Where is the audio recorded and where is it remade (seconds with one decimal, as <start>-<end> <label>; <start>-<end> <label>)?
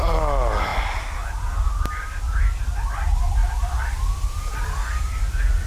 0.0-5.7 recorded